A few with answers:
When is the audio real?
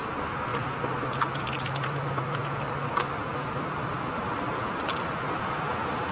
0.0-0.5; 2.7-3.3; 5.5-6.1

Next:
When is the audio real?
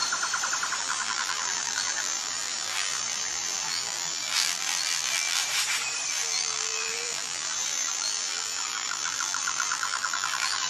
0.0-0.8; 5.4-6.1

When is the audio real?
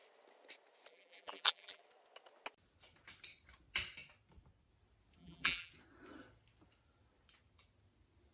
0.0-0.9; 1.8-5.2; 5.7-8.3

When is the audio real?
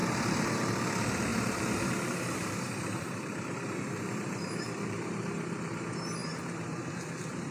0.7-1.3; 5.8-6.2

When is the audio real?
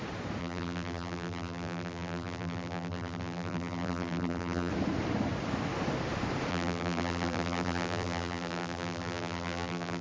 0.0-0.4; 4.7-6.5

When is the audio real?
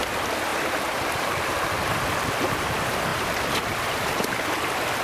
0.0-0.5; 1.5-3.1; 4.3-5.0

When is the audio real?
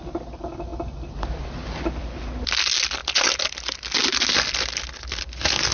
0.0-5.7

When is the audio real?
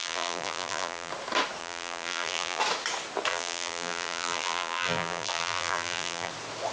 1.1-1.6; 2.6-3.3; 6.3-6.7